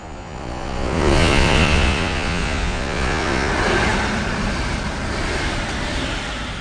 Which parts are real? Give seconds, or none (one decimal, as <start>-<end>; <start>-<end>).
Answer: 3.5-6.6